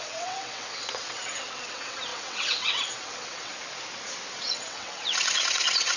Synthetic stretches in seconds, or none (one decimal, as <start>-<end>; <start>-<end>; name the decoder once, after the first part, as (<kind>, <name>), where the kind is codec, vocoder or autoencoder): 0.0-3.5 (vocoder, WaveNeXt); 4.3-6.0

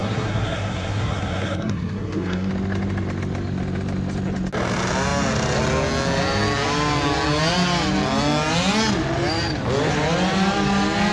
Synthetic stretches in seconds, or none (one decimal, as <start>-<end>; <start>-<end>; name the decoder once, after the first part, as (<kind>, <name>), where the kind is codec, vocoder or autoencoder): 0.0-2.5 (codec, SNAC)

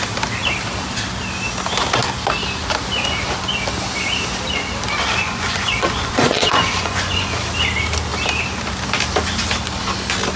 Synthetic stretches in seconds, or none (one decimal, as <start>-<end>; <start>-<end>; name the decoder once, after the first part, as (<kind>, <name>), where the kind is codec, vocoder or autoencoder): 5.2-7.3 (vocoder, Vocos)

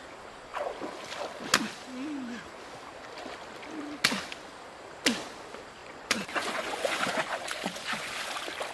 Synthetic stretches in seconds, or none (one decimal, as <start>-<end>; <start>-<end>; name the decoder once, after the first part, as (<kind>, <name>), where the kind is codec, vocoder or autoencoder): 5.8-8.1 (vocoder, Vocos)

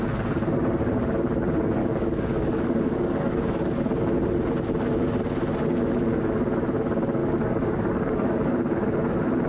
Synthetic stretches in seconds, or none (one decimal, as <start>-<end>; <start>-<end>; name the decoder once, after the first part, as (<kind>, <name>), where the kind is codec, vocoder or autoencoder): 1.8-3.8 (codec, DAC); 7.2-8.5

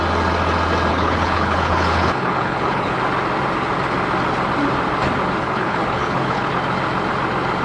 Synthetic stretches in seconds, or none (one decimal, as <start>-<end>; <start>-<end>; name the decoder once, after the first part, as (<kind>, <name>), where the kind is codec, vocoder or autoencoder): 0.9-3.0 (codec, HILCodec); 5.4-6.5